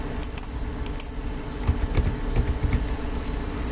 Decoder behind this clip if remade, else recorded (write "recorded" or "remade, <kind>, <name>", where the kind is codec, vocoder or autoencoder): recorded